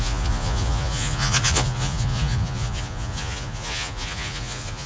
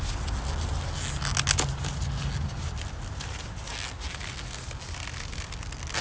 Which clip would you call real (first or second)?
second